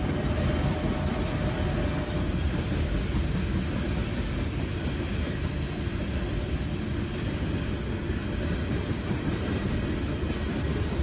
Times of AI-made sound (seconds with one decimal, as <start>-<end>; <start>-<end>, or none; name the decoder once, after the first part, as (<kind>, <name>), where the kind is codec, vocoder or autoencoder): none